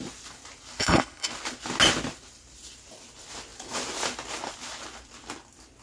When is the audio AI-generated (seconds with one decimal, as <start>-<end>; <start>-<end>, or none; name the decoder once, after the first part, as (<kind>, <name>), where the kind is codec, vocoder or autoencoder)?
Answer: 0.8-1.3 (codec, HILCodec)

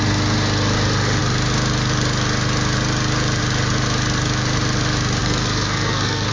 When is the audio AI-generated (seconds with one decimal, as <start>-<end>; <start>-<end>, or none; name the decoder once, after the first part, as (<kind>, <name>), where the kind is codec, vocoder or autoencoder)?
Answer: 5.2-6.3 (codec, SNAC)